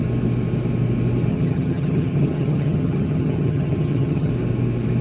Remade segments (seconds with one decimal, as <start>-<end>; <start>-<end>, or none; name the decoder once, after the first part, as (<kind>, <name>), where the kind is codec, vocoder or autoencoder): 1.3-4.3 (vocoder, HiFi-GAN)